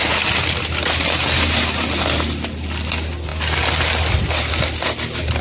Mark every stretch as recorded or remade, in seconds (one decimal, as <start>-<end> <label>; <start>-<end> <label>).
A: 0.0-5.4 recorded